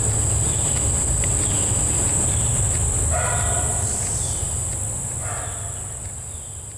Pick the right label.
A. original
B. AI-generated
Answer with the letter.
A